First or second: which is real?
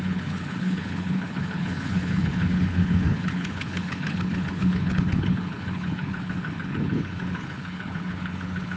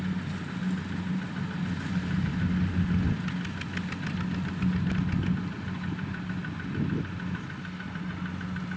second